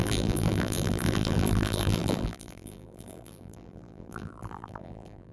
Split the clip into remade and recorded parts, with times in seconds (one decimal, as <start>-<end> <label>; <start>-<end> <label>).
0.0-5.3 remade